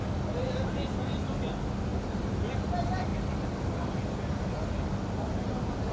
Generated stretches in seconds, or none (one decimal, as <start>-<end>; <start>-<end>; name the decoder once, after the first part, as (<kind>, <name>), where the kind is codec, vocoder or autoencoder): 1.9-2.6 (vocoder, BigVGAN v2); 3.1-4.4